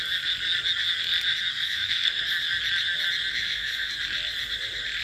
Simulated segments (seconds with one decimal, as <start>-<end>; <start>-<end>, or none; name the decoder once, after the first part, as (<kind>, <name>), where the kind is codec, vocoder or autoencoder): 1.5-2.2 (codec, SNAC); 3.3-3.9

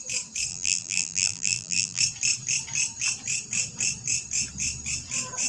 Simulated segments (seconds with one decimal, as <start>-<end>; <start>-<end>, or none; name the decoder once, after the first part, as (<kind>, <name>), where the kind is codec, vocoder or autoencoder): 0.5-2.0 (vocoder, BigVGAN v2)

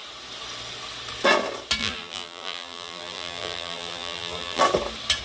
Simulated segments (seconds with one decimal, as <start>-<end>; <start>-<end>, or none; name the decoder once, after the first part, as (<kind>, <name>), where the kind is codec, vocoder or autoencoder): 1.8-4.6 (vocoder, BigVGAN v2)

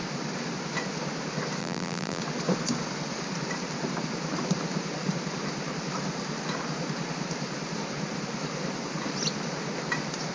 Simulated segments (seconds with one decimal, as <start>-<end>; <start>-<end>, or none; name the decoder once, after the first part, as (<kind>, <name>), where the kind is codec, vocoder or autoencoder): 1.6-2.2 (vocoder, BigVGAN v2)